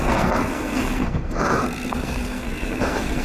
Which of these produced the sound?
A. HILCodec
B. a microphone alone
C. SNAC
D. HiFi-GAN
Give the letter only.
C